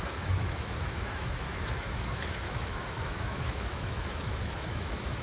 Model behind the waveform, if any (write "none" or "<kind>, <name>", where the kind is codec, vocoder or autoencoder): autoencoder, DAC-VAE